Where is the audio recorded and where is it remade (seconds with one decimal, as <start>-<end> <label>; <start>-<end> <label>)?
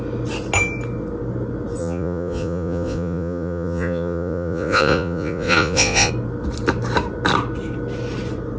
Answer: 0.0-1.8 recorded; 1.8-6.1 remade; 6.1-8.6 recorded